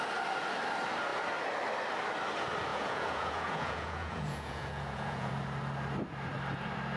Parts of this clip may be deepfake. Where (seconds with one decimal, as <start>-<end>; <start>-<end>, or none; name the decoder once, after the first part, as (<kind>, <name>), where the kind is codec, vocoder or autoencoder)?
2.7-5.3 (vocoder, Vocos)